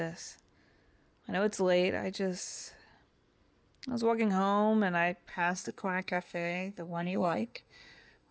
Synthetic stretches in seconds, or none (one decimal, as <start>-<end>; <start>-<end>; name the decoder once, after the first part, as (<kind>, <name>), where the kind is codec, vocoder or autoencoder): 5.3-8.3 (codec, SNAC)